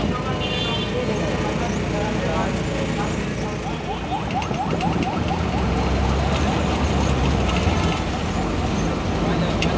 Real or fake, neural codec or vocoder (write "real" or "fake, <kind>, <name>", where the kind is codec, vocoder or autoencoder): real